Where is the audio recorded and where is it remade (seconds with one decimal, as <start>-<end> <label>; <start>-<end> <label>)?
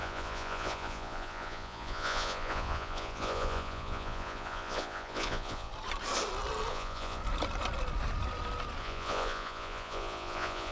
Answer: 0.0-5.7 remade; 5.7-6.7 recorded; 6.7-7.2 remade; 7.2-8.8 recorded; 8.8-10.7 remade